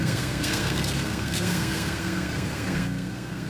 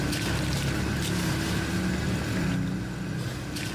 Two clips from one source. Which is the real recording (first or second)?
second